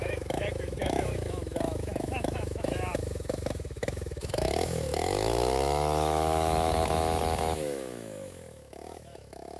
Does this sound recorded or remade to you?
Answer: remade